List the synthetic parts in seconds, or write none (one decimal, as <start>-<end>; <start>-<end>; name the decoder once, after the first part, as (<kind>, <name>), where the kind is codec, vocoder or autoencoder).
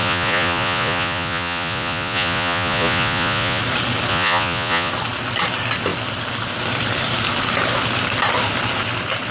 0.0-3.6 (vocoder, Vocos); 4.1-4.9